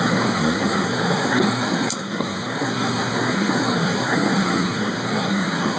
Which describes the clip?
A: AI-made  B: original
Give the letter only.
A